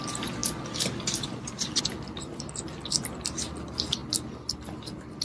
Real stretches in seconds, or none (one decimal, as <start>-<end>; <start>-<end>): 0.0-5.2